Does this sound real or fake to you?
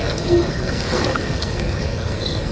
fake